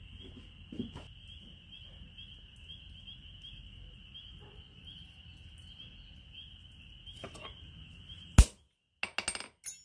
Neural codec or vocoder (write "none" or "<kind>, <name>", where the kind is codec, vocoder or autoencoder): none